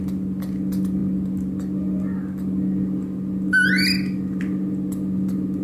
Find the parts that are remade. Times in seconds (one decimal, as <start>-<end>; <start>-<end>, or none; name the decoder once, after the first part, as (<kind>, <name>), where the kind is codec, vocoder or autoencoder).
none